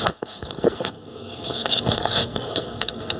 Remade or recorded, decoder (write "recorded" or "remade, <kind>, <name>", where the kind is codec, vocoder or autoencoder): remade, codec, SNAC